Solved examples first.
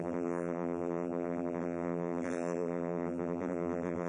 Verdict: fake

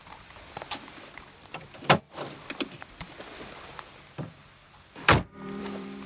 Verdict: fake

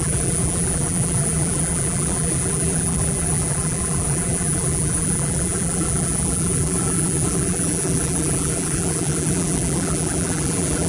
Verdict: fake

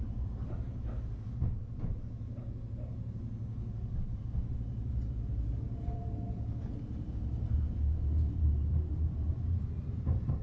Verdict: fake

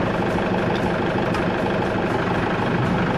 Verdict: real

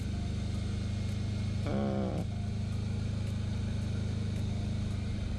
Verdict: real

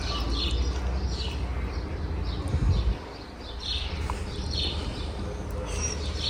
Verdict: real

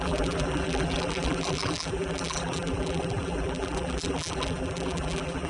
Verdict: fake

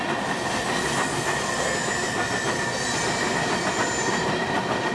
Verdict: real